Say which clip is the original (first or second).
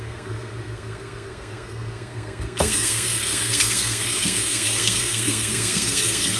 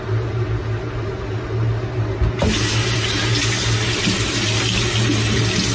second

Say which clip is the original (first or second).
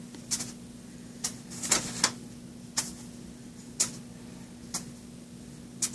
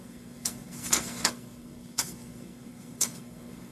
first